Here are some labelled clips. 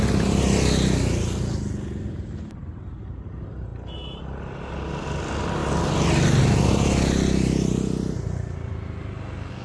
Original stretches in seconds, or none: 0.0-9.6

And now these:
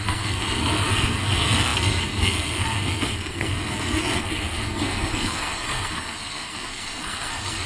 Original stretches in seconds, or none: none

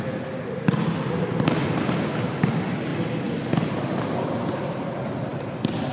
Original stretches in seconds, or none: 0.0-5.9

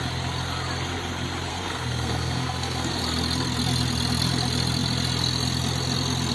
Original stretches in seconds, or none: 0.0-1.5; 3.0-6.3

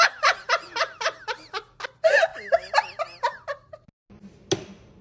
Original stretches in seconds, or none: 0.0-5.0

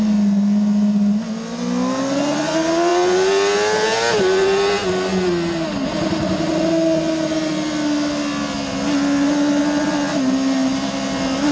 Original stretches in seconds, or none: 0.0-11.5

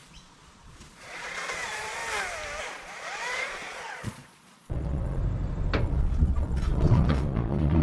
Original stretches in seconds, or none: 2.0-2.6; 5.2-5.8